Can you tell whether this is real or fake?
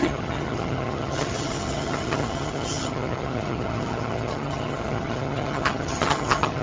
fake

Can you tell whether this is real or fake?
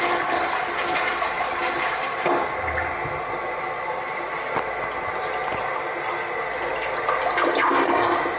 real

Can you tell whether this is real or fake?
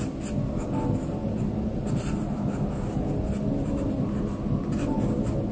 real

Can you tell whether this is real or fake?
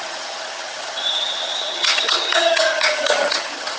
fake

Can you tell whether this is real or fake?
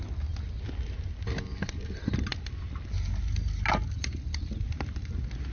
real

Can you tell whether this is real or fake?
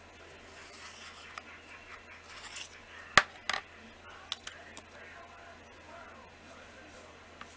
real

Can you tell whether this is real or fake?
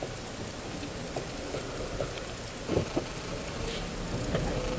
real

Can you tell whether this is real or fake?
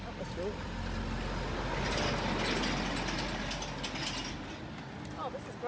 real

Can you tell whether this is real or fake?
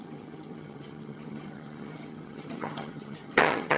fake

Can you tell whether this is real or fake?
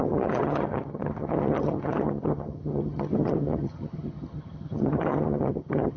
fake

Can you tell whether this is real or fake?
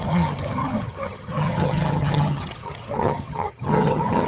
fake